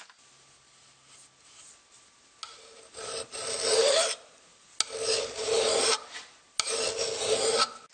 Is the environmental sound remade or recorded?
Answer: recorded